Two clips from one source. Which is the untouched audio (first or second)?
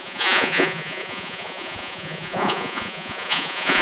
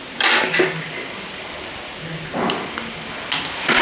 second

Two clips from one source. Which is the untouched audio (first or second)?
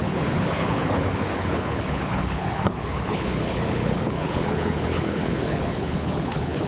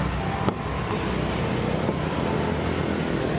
second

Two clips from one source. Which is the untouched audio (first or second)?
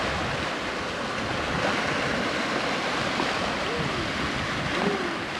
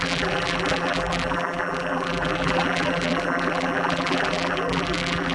first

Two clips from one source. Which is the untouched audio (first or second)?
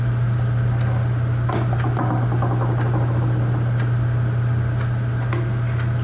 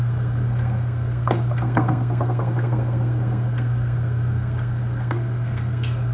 first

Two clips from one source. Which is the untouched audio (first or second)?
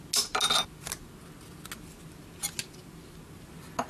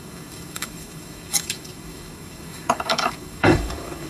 first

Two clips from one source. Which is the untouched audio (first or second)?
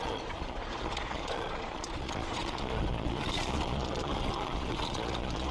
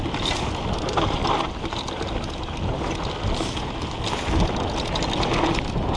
second